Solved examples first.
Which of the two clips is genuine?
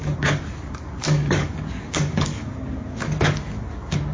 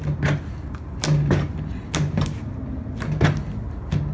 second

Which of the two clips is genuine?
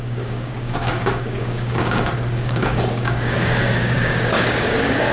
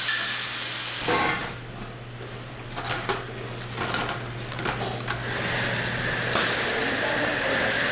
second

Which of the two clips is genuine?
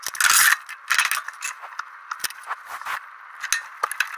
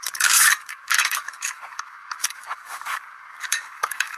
first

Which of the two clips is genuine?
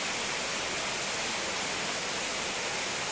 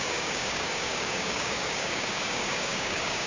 first